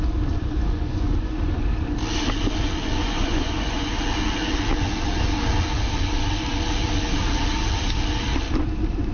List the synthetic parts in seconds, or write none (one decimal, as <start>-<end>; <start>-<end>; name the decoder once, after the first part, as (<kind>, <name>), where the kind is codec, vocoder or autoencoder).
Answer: 0.4-1.7 (vocoder, Vocos); 3.0-3.9